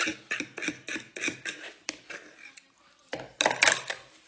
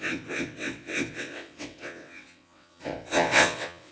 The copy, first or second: second